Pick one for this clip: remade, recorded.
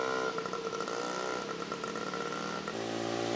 recorded